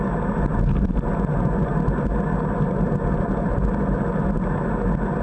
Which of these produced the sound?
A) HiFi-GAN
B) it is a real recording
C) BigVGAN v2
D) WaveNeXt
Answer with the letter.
B